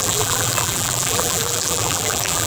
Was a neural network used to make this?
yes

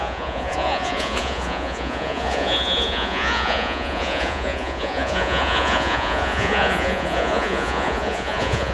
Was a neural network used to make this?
yes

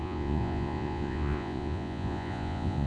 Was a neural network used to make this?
yes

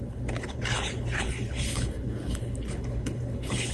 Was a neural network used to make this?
yes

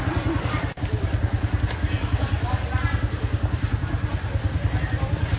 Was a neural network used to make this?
no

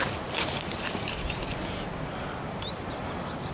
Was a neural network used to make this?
yes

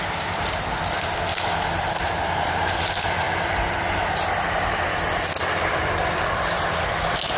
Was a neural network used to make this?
no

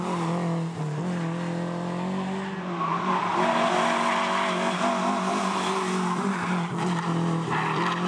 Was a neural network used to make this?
no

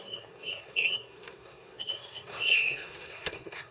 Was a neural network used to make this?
yes